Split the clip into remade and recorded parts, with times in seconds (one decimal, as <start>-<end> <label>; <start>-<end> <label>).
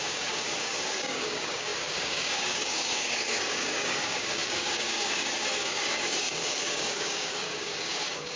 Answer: 0.0-8.4 remade